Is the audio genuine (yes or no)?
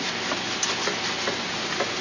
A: yes